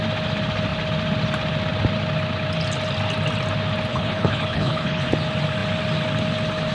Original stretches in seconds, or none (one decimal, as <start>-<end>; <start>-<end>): 0.0-3.9; 5.1-6.7